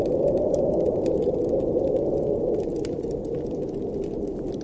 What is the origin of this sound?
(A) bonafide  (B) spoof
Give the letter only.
A